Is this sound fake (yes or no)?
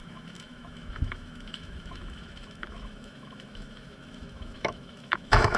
yes